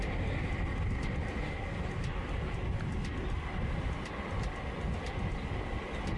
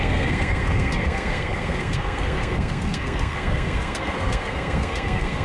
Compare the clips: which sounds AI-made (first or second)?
second